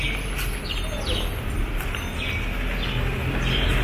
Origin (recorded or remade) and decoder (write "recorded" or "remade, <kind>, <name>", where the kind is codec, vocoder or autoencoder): recorded